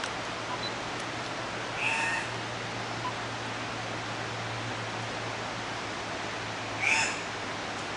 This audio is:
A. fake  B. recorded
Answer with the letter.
B